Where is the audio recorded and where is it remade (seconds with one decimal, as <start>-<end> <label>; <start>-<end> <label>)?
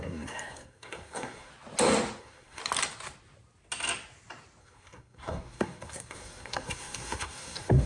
0.0-1.5 remade; 1.5-2.2 recorded; 2.2-2.6 remade; 2.6-4.6 recorded; 4.6-7.9 remade